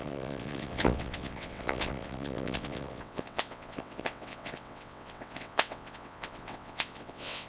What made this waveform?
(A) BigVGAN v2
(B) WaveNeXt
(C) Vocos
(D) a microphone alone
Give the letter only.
B